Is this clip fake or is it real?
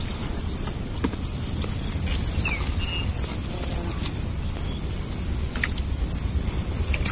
real